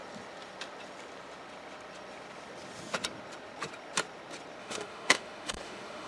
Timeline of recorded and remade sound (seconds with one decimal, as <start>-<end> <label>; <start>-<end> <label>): 0.0-4.6 recorded; 4.6-6.1 remade